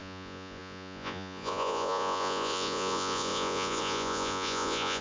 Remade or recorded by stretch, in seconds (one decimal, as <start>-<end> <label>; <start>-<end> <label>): 0.0-5.0 remade